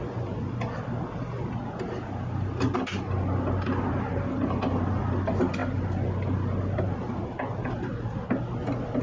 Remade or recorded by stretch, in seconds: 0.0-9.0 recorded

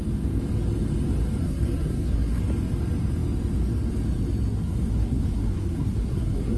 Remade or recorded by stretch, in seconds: 0.0-1.4 recorded; 1.4-2.4 remade; 2.4-4.5 recorded; 4.5-6.6 remade

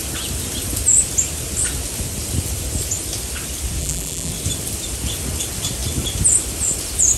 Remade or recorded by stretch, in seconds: 0.0-3.8 recorded; 3.8-4.3 remade; 4.3-7.2 recorded